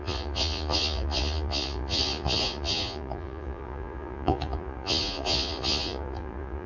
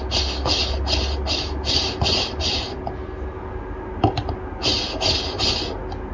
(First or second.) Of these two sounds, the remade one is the first